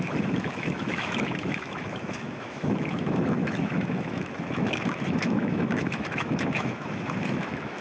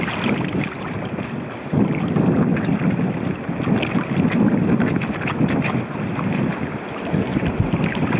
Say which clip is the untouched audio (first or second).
second